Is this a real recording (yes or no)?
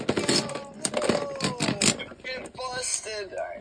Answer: yes